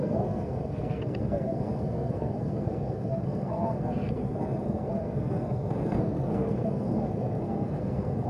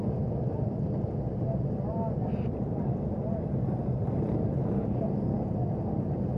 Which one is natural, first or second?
second